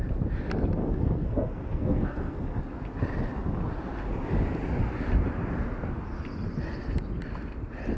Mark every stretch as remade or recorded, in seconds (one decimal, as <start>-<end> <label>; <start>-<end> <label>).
0.0-0.8 recorded; 0.8-2.6 remade; 2.6-8.0 recorded